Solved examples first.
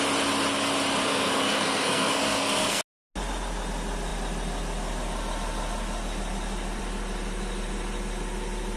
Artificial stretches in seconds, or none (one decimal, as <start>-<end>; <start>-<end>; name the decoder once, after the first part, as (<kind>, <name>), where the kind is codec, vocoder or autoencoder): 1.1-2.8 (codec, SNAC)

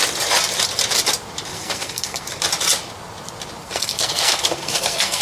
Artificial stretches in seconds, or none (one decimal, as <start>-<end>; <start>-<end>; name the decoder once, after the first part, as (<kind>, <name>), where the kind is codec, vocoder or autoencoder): 1.5-2.4 (codec, SNAC); 3.6-5.2

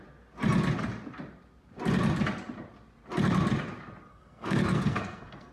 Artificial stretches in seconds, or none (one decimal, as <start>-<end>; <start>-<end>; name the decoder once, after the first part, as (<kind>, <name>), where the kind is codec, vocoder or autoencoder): 4.1-5.5 (codec, SNAC)

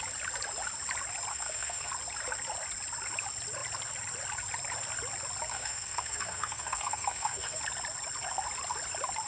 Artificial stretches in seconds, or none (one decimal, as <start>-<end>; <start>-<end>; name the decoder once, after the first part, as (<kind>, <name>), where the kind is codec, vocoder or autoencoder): 1.3-1.9 (codec, SNAC); 5.5-7.6

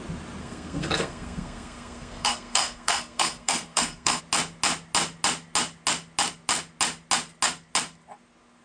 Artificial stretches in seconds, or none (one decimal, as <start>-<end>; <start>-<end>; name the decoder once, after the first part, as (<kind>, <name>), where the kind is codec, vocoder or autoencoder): 0.4-4.2 (codec, SNAC)

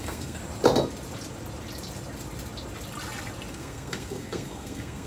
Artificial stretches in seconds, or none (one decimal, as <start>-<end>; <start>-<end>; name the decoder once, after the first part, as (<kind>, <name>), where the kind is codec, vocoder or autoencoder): 0.0-0.4 (codec, SNAC); 3.5-5.1

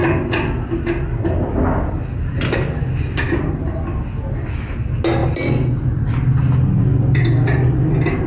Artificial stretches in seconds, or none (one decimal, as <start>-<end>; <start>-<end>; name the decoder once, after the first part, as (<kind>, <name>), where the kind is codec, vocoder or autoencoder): none